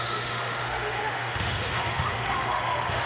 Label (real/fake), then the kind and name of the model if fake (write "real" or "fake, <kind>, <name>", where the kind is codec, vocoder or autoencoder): fake, autoencoder, DAC-VAE